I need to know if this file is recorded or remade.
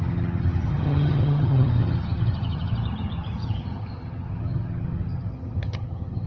remade